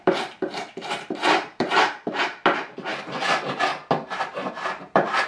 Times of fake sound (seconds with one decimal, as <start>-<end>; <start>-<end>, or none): 0.0-2.4; 3.0-3.7; 4.5-5.3